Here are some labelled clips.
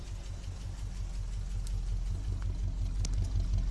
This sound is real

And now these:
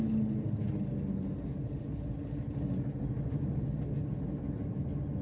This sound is real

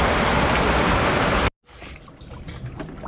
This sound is real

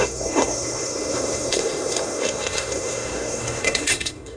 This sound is fake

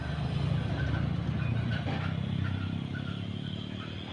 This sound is real